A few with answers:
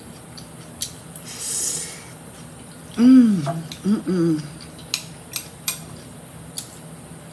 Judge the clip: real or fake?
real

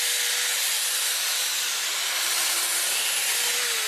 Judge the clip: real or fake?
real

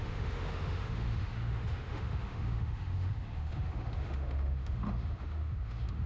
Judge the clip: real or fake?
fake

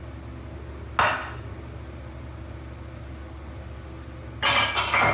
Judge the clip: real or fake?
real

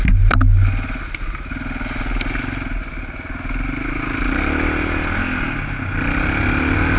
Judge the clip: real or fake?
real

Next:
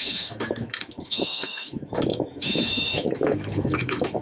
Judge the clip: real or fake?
fake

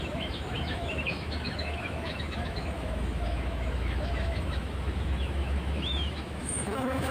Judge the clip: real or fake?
fake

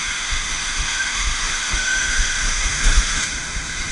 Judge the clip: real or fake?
fake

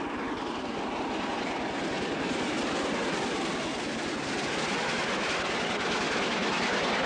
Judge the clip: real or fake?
real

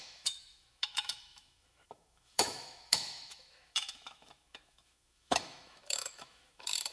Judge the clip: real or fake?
fake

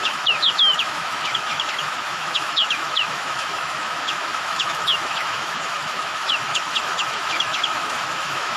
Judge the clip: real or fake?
fake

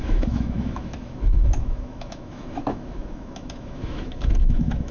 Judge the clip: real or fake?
fake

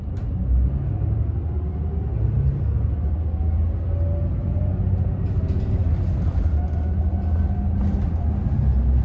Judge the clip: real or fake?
real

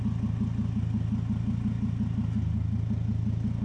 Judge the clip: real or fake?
real